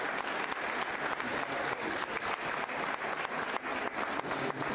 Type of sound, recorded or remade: recorded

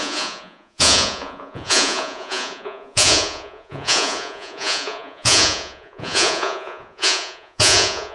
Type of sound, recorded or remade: remade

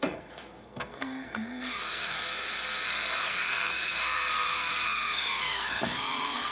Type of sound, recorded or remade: remade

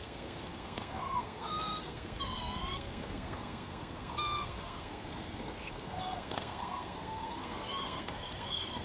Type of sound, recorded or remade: remade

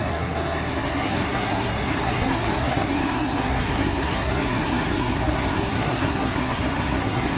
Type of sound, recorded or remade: remade